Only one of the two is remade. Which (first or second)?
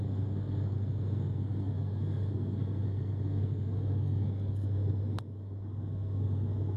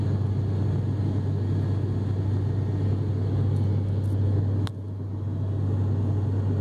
first